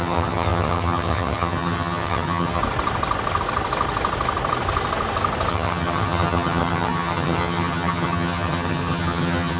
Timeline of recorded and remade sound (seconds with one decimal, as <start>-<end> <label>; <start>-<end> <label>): 0.0-2.6 remade; 2.6-5.5 recorded; 5.5-9.6 remade